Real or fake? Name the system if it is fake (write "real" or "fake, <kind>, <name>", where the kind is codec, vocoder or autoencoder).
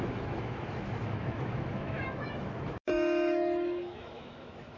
fake, autoencoder, DAC-VAE